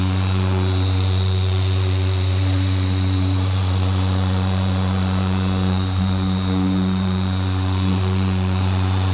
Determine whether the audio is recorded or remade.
remade